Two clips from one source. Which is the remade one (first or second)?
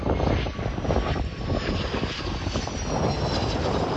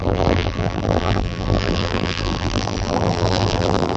second